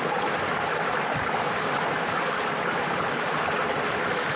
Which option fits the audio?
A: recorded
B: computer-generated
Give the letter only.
A